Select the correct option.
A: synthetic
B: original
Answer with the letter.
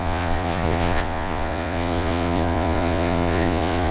A